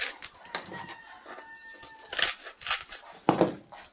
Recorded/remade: recorded